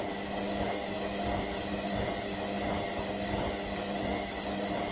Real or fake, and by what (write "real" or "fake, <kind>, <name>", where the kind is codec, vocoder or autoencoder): real